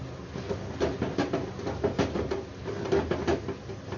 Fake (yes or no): no